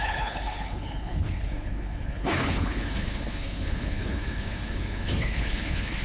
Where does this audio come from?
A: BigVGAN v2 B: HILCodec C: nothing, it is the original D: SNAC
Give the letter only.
B